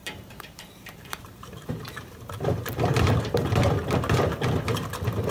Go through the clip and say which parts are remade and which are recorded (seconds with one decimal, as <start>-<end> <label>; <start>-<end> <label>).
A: 0.0-3.2 remade; 3.2-5.3 recorded